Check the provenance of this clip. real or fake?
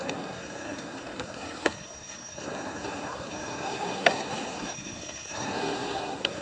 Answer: fake